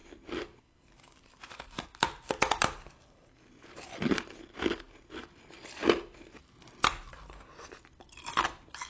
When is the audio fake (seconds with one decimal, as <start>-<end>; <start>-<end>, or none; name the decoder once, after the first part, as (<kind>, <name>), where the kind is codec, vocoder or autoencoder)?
none

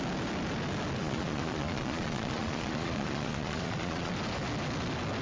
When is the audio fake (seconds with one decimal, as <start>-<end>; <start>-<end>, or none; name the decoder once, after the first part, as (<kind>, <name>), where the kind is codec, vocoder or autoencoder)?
1.0-4.1 (vocoder, Vocos)

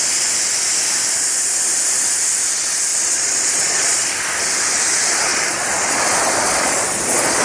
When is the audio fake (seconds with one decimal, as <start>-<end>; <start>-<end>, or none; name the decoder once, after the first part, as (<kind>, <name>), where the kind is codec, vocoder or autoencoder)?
2.9-4.1 (vocoder, Vocos); 5.3-7.4

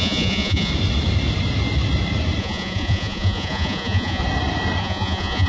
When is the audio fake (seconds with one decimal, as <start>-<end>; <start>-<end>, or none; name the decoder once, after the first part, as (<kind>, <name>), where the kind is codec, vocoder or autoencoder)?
0.0-0.7 (vocoder, Vocos); 2.4-4.2; 4.8-5.5

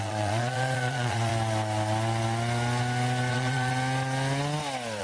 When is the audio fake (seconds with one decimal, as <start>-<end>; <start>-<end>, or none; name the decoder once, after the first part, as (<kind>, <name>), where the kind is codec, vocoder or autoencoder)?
0.0-1.3 (vocoder, Vocos); 3.3-3.7